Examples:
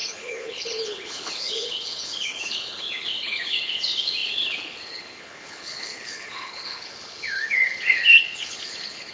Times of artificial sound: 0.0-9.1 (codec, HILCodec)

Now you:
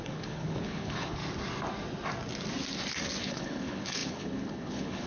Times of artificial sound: 0.0-1.2 (codec, HILCodec); 3.2-5.1